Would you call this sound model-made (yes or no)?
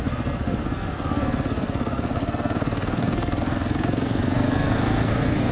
yes